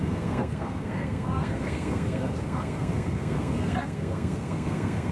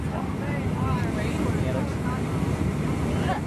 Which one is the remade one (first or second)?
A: first